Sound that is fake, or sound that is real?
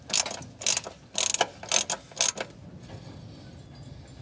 real